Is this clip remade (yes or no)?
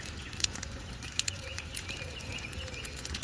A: yes